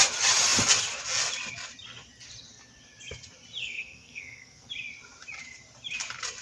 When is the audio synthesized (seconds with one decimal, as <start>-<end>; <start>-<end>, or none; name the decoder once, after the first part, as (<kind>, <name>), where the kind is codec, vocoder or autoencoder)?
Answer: 3.6-4.7 (codec, SNAC)

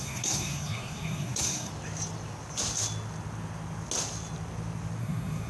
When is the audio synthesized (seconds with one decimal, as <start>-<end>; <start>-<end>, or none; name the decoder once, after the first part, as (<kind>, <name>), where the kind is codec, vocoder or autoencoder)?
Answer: 0.0-1.7 (codec, SNAC); 5.0-5.5

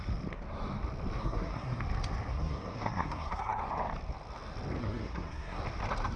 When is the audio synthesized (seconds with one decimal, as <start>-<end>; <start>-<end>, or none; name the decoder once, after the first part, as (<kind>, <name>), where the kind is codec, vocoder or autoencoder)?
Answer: 1.2-1.8 (codec, SNAC); 2.3-3.7; 4.8-5.6